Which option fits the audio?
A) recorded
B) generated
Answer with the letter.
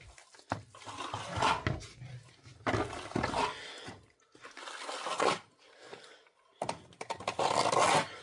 A